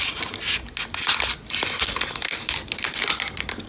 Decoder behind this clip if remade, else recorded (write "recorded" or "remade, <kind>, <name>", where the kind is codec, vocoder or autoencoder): recorded